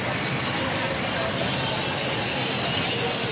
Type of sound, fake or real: real